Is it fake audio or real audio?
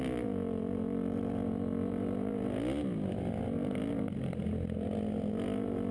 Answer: real